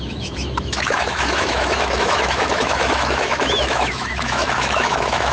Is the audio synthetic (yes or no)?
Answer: yes